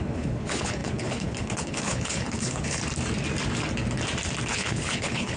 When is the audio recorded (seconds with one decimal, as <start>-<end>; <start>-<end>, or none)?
2.8-4.5